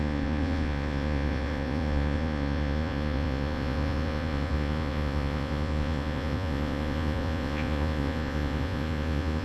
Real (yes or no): no